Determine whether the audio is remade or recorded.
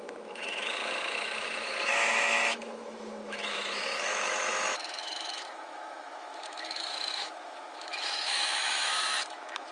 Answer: remade